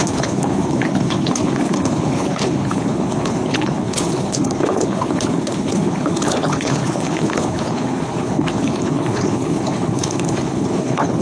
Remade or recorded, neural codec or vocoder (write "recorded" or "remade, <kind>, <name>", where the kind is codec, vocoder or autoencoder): remade, codec, HILCodec